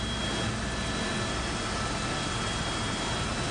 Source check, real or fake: real